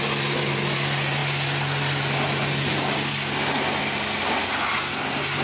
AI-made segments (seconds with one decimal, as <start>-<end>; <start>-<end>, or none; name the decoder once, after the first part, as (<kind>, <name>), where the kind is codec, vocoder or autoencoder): none